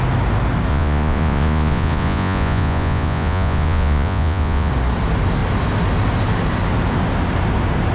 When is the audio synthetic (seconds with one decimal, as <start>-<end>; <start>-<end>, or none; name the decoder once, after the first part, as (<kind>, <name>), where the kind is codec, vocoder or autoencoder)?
0.7-4.7 (vocoder, Vocos)